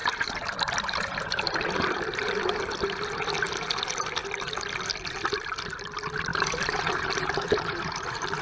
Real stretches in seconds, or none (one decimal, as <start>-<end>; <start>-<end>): 2.3-6.3